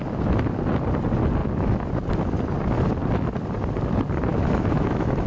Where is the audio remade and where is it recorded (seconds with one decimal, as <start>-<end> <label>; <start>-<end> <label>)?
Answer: 0.0-4.3 recorded; 4.3-5.3 remade